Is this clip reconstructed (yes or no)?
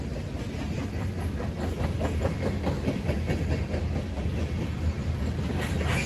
no